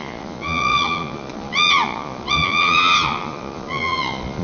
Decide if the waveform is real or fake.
fake